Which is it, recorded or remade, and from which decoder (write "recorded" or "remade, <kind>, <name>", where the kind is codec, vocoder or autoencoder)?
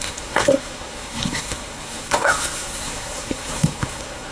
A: remade, codec, SNAC